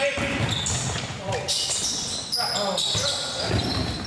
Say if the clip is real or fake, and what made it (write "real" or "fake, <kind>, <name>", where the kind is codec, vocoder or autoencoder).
real